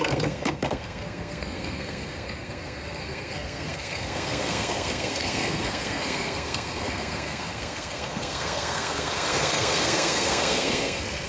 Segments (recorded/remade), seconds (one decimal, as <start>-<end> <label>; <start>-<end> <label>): 0.0-11.3 remade